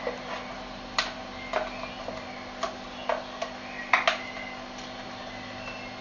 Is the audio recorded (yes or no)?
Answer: yes